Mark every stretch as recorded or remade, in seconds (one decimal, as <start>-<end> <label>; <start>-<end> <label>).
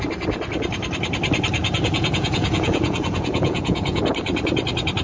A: 0.0-1.6 recorded; 1.6-4.0 remade; 4.0-5.0 recorded